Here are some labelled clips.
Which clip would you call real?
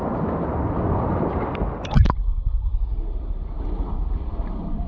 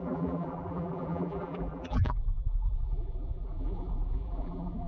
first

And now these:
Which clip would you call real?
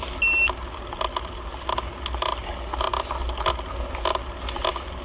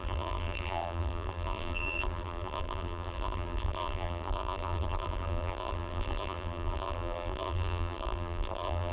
first